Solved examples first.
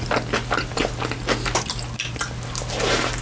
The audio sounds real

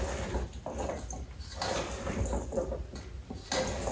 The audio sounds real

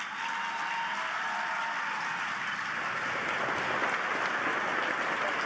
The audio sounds real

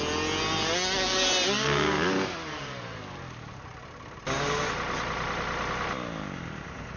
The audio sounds real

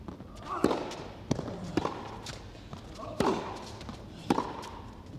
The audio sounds real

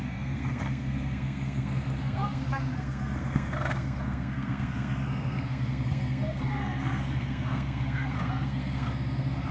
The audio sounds fake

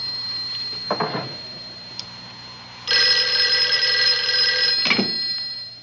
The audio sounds real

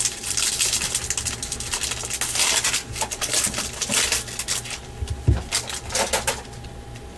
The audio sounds real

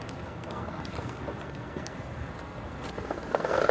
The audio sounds fake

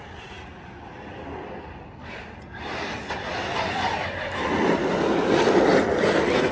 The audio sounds real